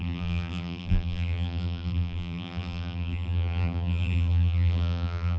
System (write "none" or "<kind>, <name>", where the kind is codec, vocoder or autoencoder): vocoder, BigVGAN v2